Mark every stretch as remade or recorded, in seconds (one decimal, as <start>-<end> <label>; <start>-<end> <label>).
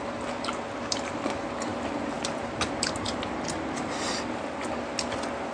0.0-5.5 recorded